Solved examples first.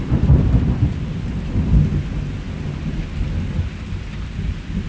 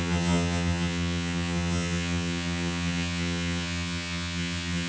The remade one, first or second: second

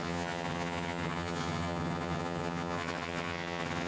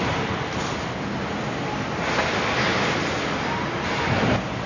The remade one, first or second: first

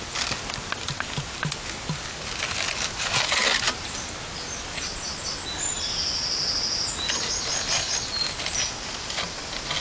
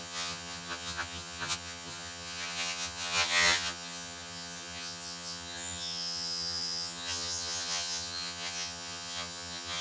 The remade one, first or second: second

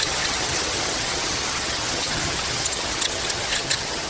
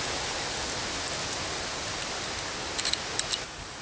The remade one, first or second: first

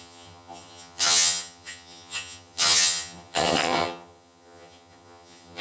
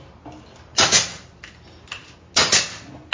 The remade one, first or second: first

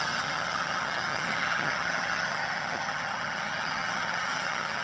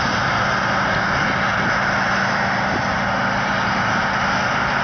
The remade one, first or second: first